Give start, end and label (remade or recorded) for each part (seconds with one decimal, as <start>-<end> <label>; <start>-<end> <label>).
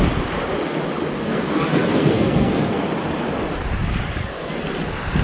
0.0-1.2 recorded; 1.2-2.8 remade; 2.8-5.2 recorded